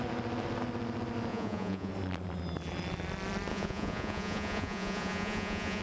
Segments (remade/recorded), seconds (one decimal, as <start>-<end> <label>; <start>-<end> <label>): 0.0-1.3 recorded; 1.3-1.9 remade; 1.9-3.5 recorded; 3.5-5.8 remade